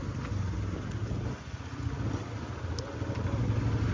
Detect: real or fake real